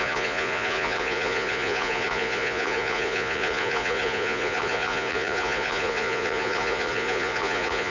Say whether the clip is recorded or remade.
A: remade